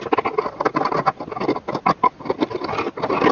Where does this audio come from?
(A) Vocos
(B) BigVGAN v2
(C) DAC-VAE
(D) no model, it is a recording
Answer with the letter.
D